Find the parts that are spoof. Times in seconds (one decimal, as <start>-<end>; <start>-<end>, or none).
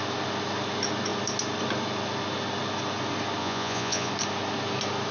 3.4-4.1